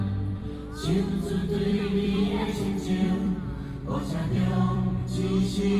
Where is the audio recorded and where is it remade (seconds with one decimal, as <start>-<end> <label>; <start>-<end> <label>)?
0.0-1.4 recorded; 1.4-4.9 remade; 4.9-5.8 recorded